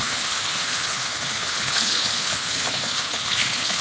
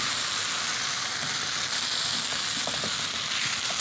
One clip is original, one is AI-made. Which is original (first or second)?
second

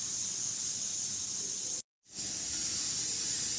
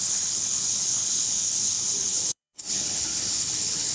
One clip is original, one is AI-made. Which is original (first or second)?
first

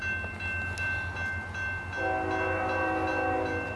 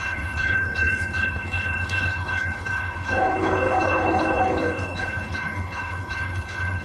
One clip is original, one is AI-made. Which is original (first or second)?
first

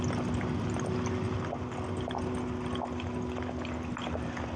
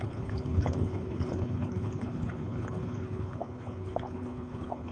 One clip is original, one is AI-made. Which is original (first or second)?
first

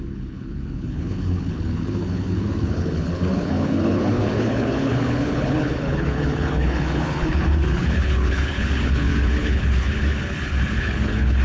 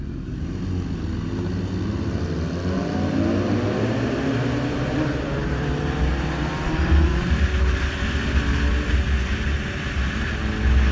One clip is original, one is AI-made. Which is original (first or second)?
second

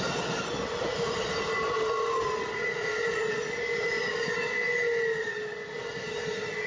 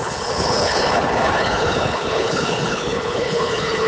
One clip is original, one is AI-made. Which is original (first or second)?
first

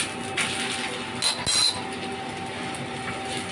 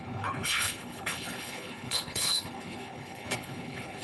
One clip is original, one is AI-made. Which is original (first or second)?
first